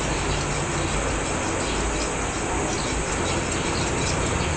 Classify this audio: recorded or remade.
recorded